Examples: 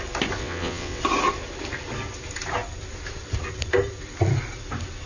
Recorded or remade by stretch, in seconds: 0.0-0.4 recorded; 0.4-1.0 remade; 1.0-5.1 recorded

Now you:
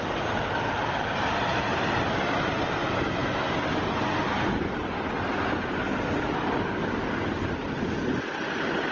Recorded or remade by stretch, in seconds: 0.0-8.9 recorded

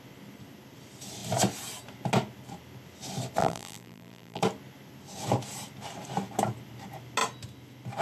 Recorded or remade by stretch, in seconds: 0.0-3.4 recorded; 3.4-4.4 remade; 4.4-8.0 recorded

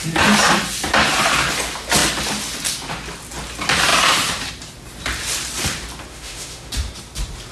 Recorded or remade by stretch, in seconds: 0.0-6.1 recorded; 6.1-6.7 remade; 6.7-7.5 recorded